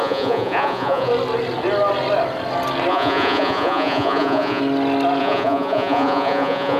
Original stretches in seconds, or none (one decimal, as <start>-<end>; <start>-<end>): 1.1-2.9; 4.6-5.2

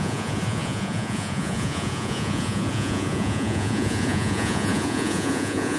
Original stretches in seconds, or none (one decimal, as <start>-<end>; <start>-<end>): none

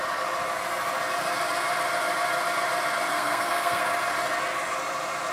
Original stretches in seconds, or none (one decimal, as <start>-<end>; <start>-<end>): 0.0-3.1; 3.8-5.3

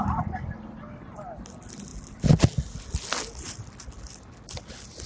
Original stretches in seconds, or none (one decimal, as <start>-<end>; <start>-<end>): 0.0-5.1